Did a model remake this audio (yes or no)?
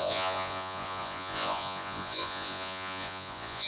yes